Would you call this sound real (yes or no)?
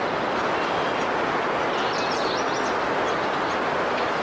yes